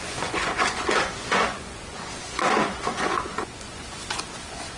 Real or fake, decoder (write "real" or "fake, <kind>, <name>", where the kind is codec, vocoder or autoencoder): fake, vocoder, Vocos